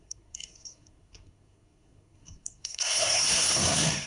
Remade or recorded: remade